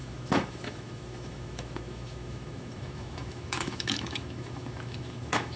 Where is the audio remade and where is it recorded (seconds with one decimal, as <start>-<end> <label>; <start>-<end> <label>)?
0.0-5.6 remade